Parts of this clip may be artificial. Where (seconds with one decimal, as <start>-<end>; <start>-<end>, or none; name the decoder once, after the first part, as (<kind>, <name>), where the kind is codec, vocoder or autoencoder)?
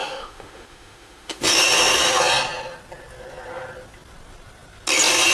0.0-1.4 (autoencoder, DAC-VAE)